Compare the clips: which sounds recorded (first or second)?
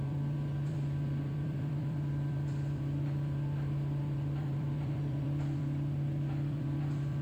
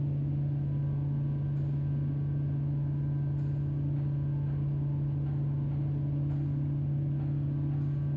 second